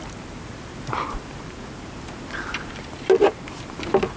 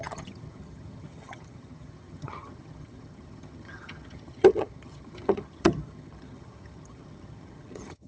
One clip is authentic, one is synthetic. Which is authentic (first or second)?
first